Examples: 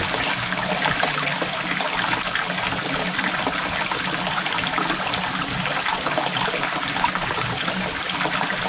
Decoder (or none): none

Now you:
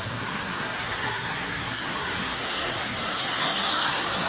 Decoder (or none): codec, SNAC